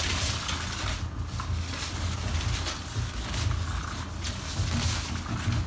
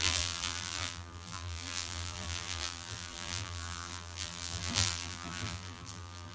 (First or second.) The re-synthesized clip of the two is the second